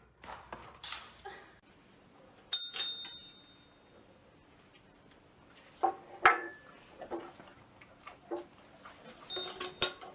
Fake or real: real